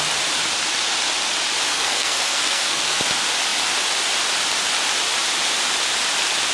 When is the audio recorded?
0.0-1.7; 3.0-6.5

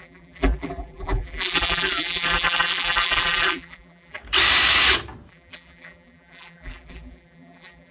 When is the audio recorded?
4.2-5.3